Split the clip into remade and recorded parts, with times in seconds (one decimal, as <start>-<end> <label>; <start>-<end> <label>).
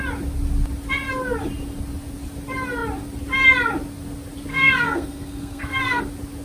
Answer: 0.0-4.5 recorded; 4.5-6.0 remade; 6.0-6.4 recorded